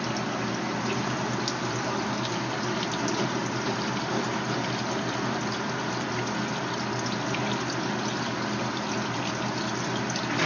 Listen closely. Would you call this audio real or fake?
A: real